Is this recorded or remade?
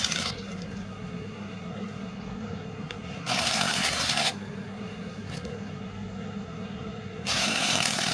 remade